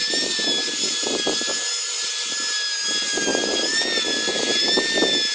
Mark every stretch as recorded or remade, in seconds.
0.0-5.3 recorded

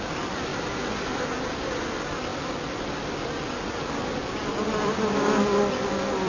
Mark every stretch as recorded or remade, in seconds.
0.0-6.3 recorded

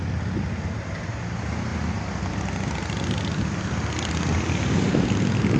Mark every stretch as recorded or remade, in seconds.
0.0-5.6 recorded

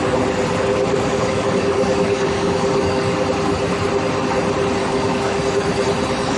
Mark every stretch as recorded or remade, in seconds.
0.0-0.9 recorded; 0.9-3.2 remade; 3.2-4.8 recorded; 4.8-5.4 remade; 5.4-6.4 recorded

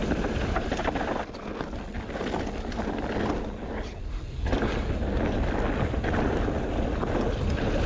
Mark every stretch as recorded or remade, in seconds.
0.0-7.9 recorded

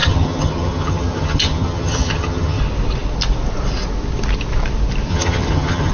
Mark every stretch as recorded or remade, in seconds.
0.0-2.6 remade; 2.6-5.1 recorded; 5.1-5.9 remade